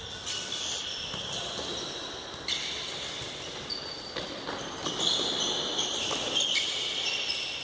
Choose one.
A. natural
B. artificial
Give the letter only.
A